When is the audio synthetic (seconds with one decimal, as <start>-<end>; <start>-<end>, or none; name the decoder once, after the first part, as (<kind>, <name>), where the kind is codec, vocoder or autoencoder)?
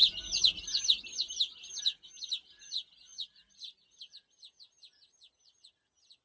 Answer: none